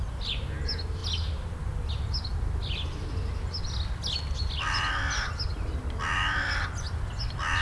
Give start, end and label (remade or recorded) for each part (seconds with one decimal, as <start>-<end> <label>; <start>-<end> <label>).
0.0-7.6 recorded